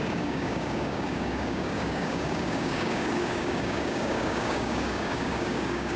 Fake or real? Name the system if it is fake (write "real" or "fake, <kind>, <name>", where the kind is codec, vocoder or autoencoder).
fake, codec, DAC